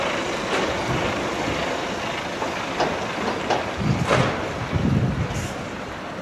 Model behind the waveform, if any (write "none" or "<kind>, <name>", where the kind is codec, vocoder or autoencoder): none